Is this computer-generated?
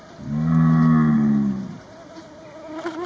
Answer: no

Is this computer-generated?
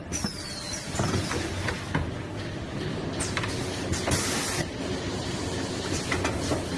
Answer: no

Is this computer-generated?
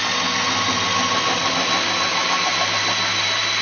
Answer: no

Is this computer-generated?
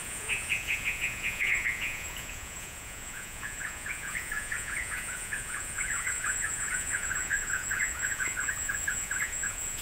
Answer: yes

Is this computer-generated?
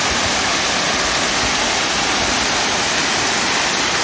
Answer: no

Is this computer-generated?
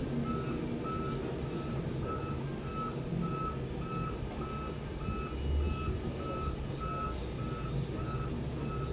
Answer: no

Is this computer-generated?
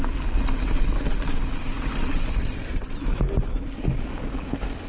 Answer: no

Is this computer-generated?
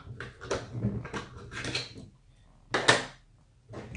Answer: no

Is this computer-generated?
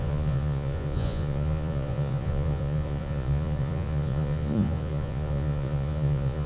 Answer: yes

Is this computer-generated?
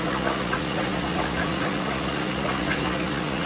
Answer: yes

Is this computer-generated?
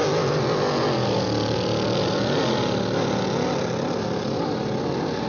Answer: no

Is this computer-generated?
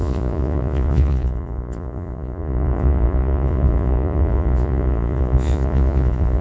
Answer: yes